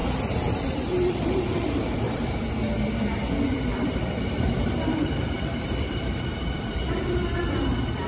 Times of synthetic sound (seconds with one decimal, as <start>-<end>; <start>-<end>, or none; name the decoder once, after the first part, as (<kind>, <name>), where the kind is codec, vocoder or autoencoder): 0.0-2.5 (vocoder, BigVGAN v2); 3.7-7.1